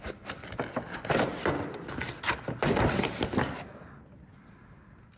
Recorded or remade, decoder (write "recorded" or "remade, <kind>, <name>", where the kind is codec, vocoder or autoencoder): recorded